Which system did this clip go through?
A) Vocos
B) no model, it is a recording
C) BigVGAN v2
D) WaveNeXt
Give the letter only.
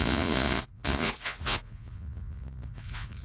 A